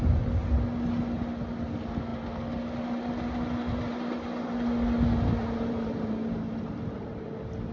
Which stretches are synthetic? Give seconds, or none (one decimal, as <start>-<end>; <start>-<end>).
5.4-7.1

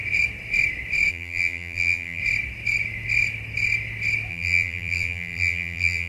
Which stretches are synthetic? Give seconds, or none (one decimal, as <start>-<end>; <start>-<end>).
1.1-2.2; 4.3-6.1

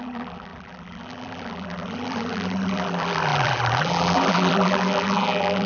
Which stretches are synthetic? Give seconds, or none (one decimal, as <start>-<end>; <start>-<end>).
0.0-5.7

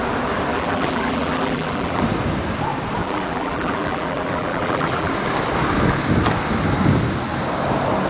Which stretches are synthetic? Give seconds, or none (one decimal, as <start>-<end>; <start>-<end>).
0.5-2.0; 3.0-5.1

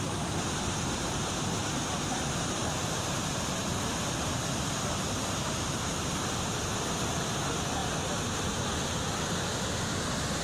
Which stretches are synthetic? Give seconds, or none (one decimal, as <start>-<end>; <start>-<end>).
2.6-6.6

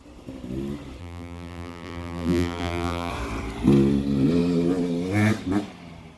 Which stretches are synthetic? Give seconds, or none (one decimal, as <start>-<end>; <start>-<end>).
1.0-3.1

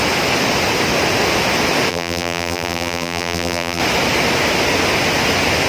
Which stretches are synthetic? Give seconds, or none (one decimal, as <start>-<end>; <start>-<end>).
1.9-3.8

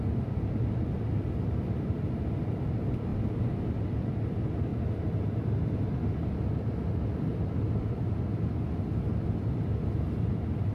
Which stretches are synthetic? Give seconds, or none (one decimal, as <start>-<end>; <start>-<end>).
none